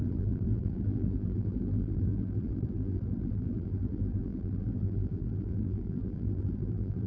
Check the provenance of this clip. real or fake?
fake